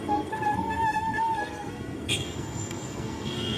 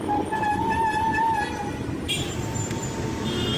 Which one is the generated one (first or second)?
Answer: first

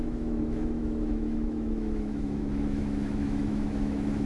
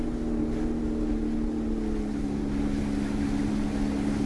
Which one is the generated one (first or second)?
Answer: first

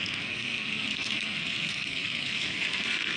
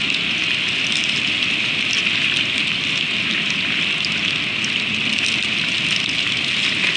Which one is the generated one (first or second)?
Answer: first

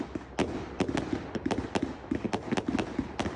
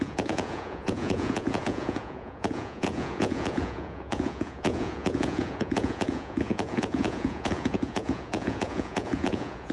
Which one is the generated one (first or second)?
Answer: second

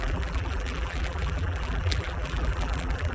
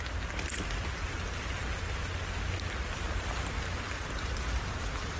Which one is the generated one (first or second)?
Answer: first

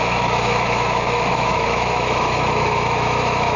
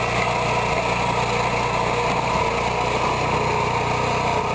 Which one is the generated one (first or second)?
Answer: first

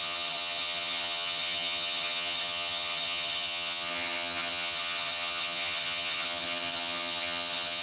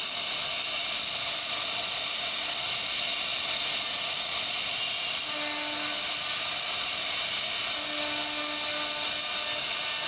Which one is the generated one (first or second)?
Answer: first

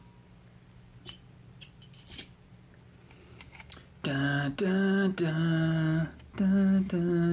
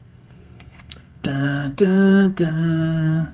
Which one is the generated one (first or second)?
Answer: second